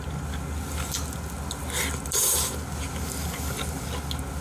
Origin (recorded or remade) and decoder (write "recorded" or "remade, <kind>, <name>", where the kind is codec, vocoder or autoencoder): recorded